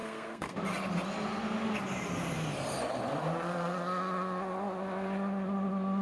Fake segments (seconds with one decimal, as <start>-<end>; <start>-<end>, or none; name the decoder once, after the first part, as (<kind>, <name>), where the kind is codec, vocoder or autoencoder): 0.0-0.6 (codec, SNAC)